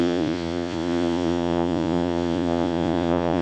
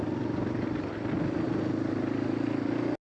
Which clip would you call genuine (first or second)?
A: second